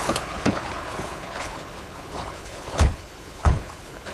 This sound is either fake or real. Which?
fake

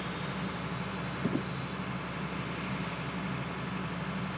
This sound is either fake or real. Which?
real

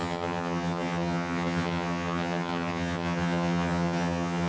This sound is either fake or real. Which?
fake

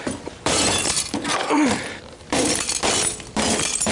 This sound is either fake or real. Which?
fake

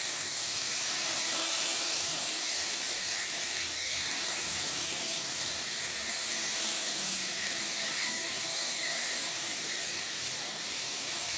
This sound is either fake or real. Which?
fake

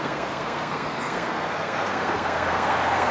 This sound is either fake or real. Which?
fake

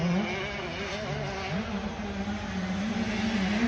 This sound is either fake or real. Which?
real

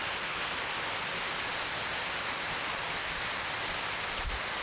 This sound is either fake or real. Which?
real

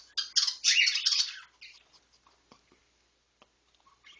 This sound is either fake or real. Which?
real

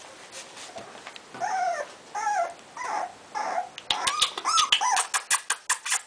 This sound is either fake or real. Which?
real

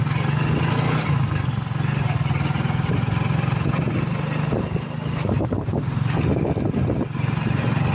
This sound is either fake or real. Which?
real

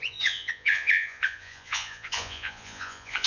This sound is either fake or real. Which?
fake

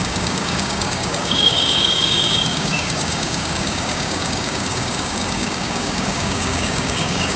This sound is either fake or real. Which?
fake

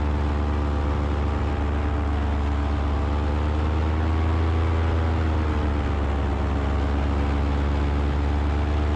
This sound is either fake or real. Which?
real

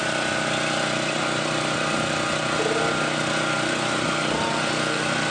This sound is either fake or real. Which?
real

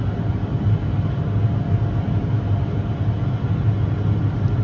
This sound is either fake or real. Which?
real